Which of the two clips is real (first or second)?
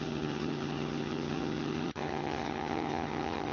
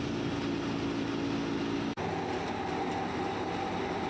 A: second